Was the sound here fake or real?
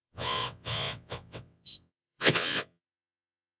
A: fake